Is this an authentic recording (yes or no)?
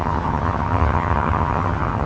no